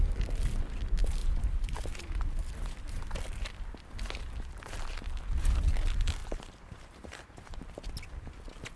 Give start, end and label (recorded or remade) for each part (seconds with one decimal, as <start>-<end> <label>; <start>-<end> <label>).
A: 0.0-1.2 recorded; 1.2-2.1 remade; 2.1-6.2 recorded; 6.2-7.6 remade; 7.6-8.8 recorded